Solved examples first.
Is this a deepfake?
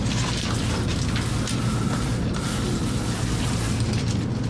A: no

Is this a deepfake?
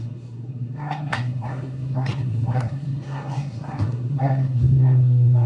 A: yes